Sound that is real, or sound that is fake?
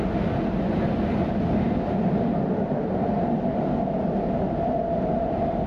real